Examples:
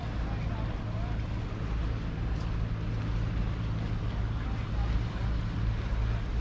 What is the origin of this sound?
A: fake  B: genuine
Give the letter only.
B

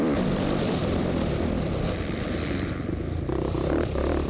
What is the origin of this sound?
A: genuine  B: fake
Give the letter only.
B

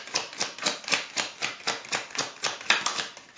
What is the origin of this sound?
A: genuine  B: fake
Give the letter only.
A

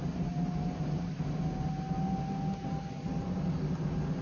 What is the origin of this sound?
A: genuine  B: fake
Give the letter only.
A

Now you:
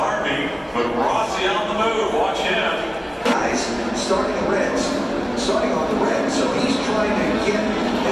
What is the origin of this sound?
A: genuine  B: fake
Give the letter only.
A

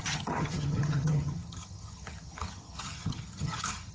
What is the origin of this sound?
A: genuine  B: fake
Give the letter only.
B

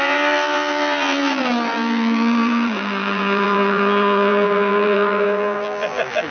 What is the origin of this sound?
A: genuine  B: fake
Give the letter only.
B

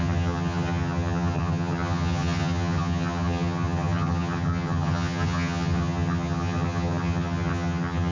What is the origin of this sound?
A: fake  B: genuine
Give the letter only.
A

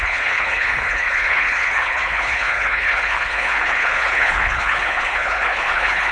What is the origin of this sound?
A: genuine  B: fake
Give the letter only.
B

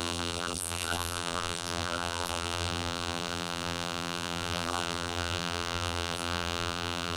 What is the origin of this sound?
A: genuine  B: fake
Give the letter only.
B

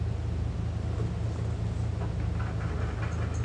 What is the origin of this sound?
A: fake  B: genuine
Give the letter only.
B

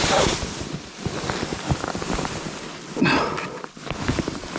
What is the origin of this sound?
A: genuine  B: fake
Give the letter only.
B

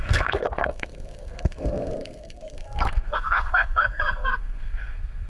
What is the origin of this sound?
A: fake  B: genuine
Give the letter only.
A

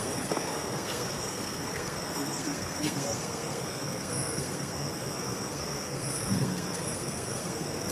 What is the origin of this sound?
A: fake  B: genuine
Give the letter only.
A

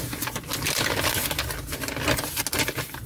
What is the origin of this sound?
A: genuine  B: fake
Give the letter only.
A